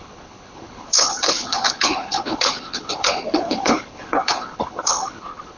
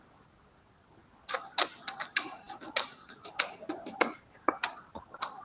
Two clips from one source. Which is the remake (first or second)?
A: first